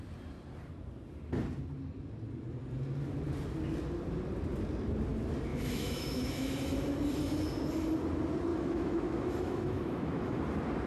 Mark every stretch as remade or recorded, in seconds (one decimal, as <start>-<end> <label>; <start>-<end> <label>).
0.0-5.5 recorded; 5.5-6.6 remade; 6.6-8.5 recorded; 8.5-10.4 remade; 10.4-10.9 recorded

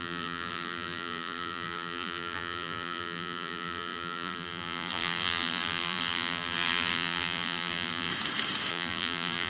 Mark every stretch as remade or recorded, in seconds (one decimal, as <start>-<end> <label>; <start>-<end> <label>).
0.0-8.1 remade; 8.1-8.7 recorded; 8.7-9.5 remade

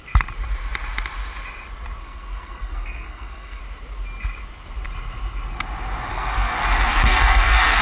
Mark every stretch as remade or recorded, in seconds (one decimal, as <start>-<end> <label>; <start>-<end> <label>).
0.0-2.0 recorded; 2.0-3.6 remade; 3.6-6.1 recorded; 6.1-7.8 remade